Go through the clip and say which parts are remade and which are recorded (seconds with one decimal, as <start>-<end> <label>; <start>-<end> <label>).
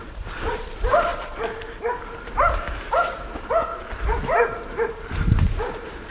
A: 0.0-1.1 remade; 1.1-4.7 recorded; 4.7-6.1 remade